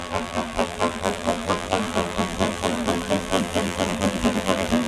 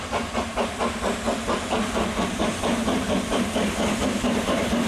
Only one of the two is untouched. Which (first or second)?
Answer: second